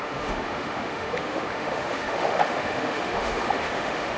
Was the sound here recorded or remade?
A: remade